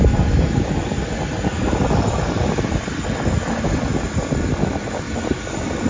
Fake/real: real